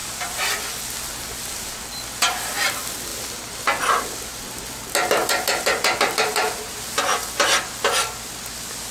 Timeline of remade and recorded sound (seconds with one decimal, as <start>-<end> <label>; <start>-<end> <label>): 0.0-5.2 recorded; 5.2-7.0 remade; 7.0-8.9 recorded